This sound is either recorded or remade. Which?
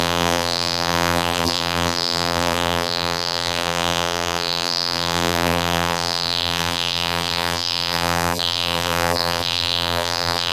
remade